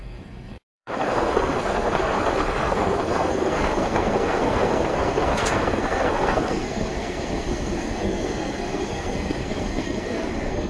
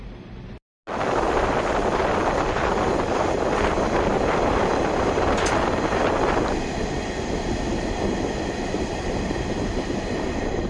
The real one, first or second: second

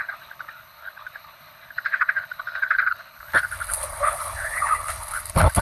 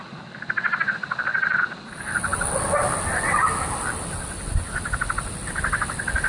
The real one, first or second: second